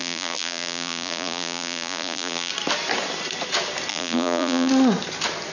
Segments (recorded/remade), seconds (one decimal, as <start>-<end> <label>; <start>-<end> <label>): 0.0-2.5 remade; 2.5-3.9 recorded; 3.9-4.7 remade; 4.7-5.5 recorded